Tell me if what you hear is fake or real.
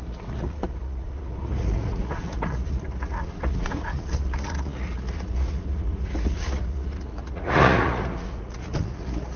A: fake